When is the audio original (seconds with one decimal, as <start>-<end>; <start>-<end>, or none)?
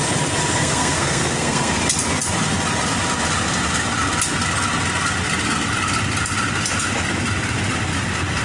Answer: 0.0-0.6; 1.8-8.4